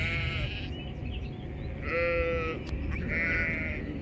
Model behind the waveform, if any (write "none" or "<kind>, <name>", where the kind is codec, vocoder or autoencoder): none